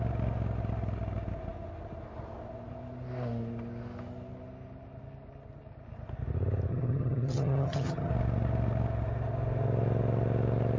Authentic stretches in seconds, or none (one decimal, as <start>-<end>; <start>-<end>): 0.0-6.7; 8.1-10.8